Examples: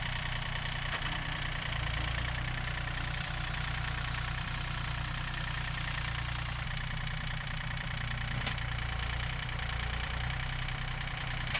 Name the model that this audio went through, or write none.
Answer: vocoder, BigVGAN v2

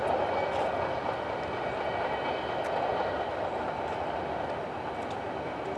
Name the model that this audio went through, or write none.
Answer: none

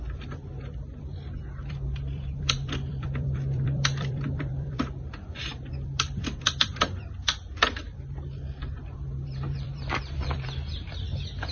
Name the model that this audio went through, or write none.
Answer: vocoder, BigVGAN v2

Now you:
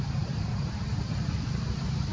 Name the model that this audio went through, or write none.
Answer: vocoder, BigVGAN v2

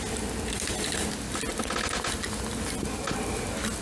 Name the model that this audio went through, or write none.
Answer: none